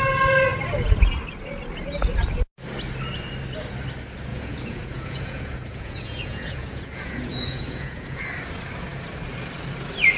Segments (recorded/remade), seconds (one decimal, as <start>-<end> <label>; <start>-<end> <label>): 0.0-4.3 recorded; 4.3-8.2 remade; 8.2-10.2 recorded